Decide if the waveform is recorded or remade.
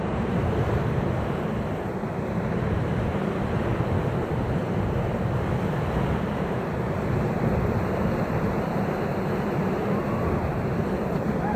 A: remade